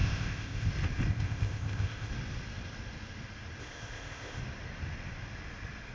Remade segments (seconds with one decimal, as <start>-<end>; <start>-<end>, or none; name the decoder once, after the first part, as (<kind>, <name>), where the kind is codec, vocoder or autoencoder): 0.0-0.7 (codec, ZipCodec); 1.1-2.1; 3.6-4.4